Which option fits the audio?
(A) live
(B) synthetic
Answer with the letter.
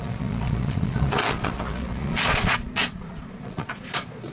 B